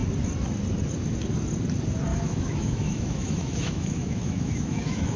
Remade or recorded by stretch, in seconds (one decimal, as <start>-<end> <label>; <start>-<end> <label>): 0.0-2.1 recorded; 2.1-5.2 remade